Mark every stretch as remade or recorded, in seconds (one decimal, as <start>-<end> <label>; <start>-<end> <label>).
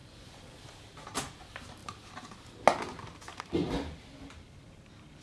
0.0-0.6 remade; 0.6-5.2 recorded